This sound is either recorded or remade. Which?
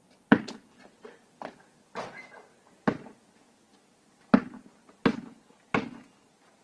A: recorded